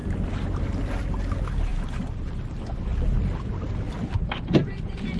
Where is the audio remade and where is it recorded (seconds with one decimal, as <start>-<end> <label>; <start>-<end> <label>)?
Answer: 0.0-0.6 remade; 0.6-2.9 recorded; 2.9-3.7 remade; 3.7-5.2 recorded